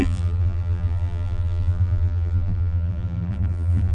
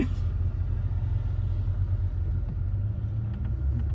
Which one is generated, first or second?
first